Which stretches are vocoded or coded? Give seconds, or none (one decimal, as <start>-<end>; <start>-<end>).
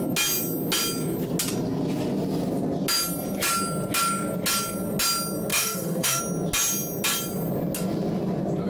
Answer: 5.5-6.2